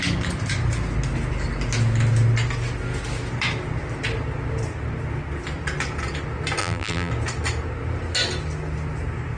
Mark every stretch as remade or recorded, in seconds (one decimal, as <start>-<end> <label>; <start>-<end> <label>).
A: 0.0-6.6 recorded; 6.6-7.1 remade; 7.1-9.4 recorded